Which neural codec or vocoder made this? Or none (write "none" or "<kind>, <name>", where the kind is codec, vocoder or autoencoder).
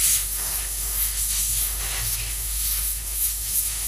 autoencoder, DAC-VAE